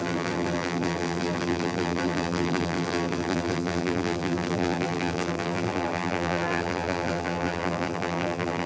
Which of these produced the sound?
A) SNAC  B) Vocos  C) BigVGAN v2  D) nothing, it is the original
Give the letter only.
C